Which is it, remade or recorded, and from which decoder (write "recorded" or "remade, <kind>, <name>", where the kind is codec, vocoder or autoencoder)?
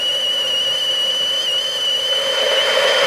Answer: recorded